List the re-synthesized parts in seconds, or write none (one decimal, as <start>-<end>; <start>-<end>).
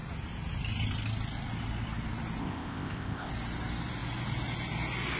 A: 2.4-3.3